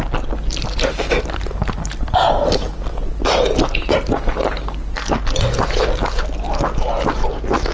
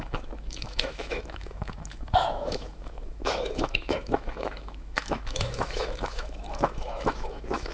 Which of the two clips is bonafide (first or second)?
first